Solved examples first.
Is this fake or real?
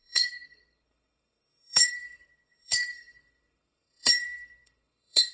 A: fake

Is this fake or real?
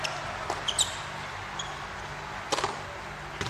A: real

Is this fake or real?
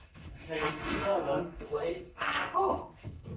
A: fake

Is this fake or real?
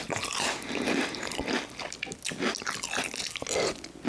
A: real